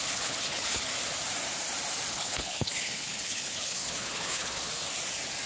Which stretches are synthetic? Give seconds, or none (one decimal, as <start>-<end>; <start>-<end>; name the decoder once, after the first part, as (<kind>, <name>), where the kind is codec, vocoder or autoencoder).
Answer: 0.0-0.9 (codec, HILCodec); 2.1-4.7